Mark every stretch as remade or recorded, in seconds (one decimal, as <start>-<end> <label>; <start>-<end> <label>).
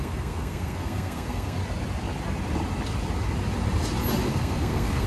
0.0-1.6 remade; 1.6-4.3 recorded; 4.3-5.1 remade